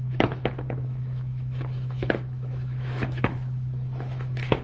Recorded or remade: remade